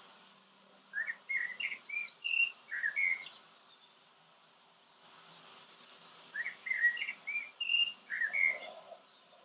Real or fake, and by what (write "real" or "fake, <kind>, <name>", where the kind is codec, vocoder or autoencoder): real